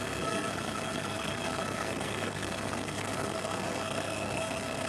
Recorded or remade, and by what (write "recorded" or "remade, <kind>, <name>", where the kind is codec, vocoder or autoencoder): remade, codec, SNAC